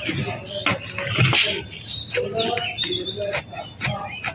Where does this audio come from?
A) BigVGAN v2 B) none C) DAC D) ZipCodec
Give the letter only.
B